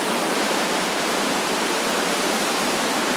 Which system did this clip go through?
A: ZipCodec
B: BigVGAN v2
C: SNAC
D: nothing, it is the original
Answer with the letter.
B